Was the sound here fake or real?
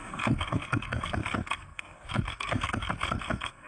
fake